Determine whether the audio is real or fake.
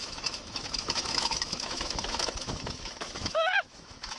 fake